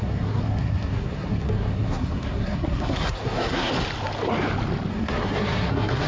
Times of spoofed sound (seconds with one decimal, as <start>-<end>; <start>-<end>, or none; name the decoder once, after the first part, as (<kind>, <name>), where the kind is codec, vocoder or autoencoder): 0.0-3.7 (codec, SNAC); 4.9-6.1

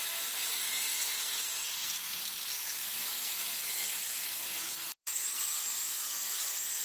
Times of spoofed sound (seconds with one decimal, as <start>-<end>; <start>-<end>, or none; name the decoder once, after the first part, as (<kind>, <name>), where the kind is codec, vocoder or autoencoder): 0.0-6.8 (codec, SNAC)

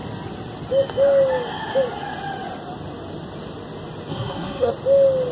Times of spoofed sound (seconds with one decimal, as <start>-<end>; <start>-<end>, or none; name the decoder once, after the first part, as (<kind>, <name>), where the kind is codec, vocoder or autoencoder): 4.1-4.7 (codec, SNAC)

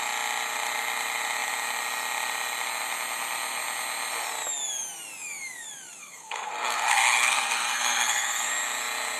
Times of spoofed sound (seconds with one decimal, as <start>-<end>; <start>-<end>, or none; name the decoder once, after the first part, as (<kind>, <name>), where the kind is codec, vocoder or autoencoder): 6.0-8.5 (codec, SNAC)

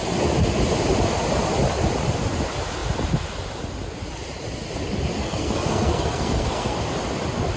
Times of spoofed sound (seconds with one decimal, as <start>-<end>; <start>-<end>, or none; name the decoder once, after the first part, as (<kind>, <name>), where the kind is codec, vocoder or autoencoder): 5.2-6.8 (codec, SNAC)

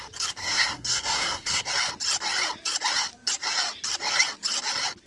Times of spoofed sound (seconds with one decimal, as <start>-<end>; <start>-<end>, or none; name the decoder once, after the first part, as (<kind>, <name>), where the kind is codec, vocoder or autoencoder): 0.4-1.7 (codec, SNAC)